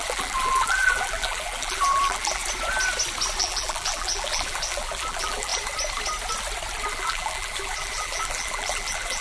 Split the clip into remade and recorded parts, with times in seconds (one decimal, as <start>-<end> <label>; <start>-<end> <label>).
0.0-2.4 remade; 2.4-3.4 recorded; 3.4-5.5 remade; 5.5-6.9 recorded; 6.9-9.2 remade